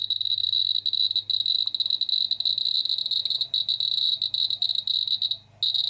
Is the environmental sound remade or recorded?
recorded